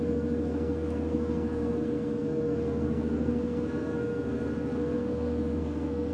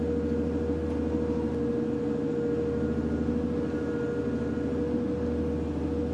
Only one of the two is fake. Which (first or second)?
first